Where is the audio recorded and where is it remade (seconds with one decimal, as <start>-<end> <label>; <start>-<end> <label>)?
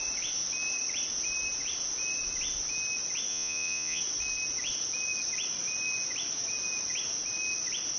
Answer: 0.0-3.3 recorded; 3.3-4.0 remade; 4.0-8.0 recorded